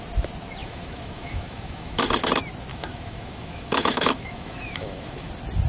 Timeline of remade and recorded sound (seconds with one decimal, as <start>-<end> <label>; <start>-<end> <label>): 0.0-0.6 recorded; 0.6-2.0 remade; 2.0-2.7 recorded; 2.7-5.3 remade; 5.3-5.7 recorded